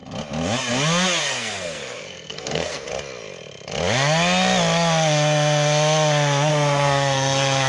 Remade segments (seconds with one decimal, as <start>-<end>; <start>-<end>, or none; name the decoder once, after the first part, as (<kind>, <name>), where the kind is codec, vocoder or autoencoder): 1.2-2.9 (codec, SNAC); 6.5-7.7